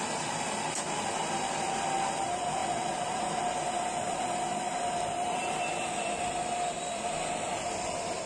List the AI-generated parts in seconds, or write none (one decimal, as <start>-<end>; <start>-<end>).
2.6-3.5